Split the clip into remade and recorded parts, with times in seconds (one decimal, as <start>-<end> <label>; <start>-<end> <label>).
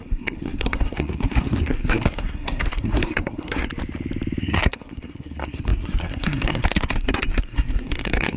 0.0-3.7 remade; 3.7-4.4 recorded; 4.4-8.4 remade